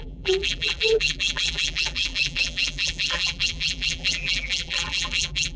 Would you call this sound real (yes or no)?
no